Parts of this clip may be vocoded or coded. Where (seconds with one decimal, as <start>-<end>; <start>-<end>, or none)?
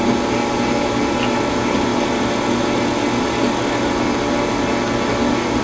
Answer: none